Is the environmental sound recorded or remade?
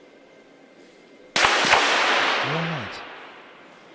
recorded